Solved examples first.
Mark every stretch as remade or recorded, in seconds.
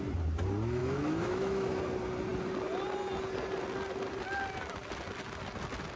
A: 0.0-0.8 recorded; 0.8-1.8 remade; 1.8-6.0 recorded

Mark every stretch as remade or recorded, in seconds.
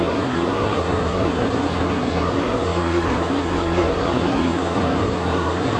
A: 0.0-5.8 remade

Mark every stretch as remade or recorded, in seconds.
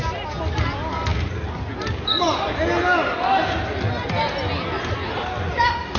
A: 0.0-6.0 recorded